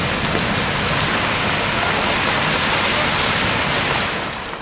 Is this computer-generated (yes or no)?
no